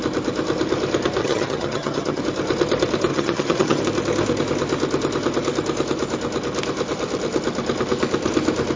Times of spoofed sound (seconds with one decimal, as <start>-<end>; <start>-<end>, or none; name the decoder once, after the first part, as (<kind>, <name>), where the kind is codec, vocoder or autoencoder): 1.2-2.2 (vocoder, HiFi-GAN); 3.1-3.8